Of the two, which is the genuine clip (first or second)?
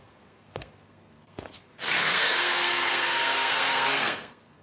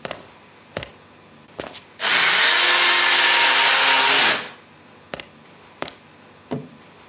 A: second